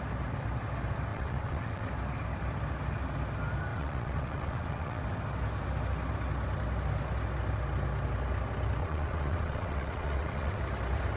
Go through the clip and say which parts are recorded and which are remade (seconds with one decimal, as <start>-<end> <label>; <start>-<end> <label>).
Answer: 0.0-1.1 recorded; 1.1-1.9 remade; 1.9-3.7 recorded; 3.7-5.0 remade; 5.0-8.8 recorded; 8.8-10.6 remade; 10.6-11.2 recorded